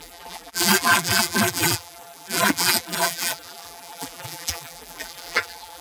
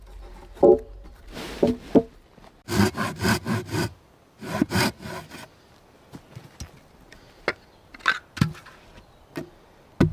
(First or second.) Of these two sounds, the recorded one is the second